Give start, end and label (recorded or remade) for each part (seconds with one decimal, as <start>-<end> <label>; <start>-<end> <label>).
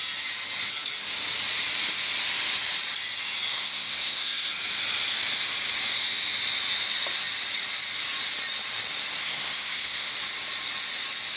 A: 0.0-3.5 recorded; 3.5-4.5 remade; 4.5-9.2 recorded; 9.2-10.1 remade; 10.1-11.4 recorded